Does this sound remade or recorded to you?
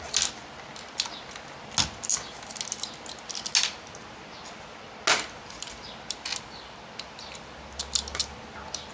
recorded